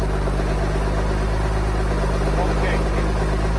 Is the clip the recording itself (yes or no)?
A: yes